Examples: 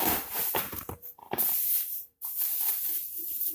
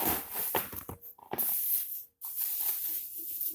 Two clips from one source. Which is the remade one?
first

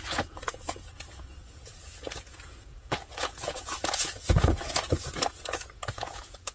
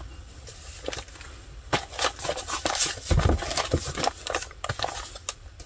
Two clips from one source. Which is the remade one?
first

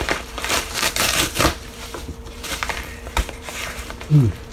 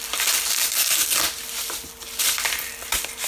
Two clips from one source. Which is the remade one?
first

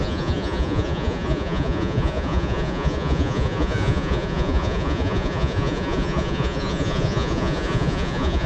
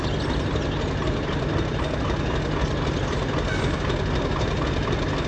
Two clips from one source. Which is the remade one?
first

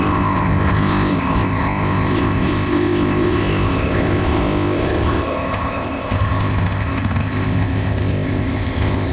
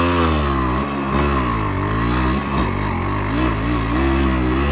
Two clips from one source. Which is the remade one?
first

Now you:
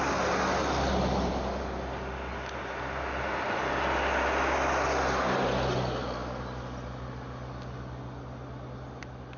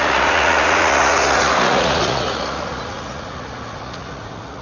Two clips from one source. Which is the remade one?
second